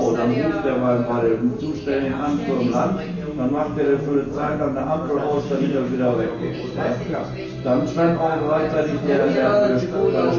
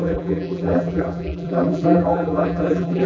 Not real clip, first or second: second